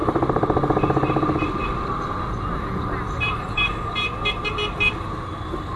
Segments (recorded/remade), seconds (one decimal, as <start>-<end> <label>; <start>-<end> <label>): 0.0-5.8 recorded